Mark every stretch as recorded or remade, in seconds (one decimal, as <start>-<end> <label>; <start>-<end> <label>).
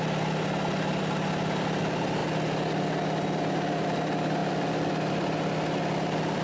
0.0-6.4 recorded